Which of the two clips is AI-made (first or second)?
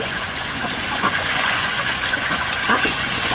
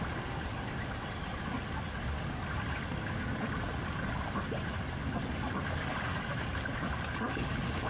first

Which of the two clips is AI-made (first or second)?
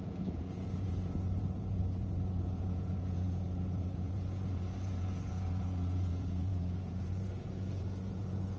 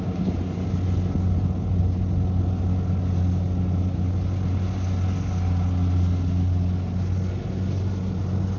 first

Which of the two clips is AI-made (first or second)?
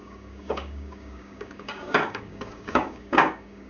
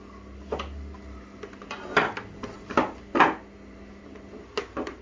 first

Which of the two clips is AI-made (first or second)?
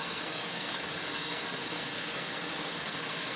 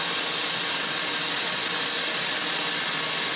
first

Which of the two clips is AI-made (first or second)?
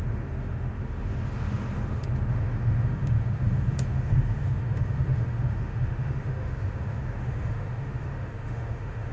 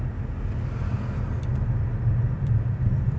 first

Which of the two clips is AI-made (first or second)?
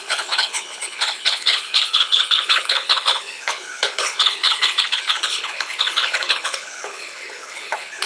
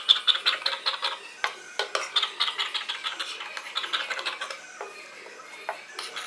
first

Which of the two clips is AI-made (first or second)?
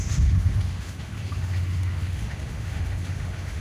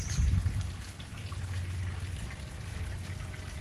first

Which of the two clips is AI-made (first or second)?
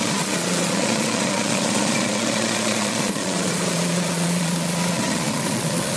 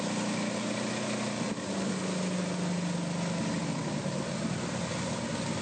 first